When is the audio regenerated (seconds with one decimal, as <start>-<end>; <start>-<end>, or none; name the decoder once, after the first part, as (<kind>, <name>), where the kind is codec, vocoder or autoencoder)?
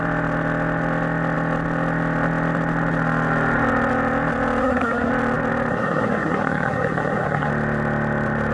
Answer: 4.6-5.1 (codec, SNAC); 5.7-7.5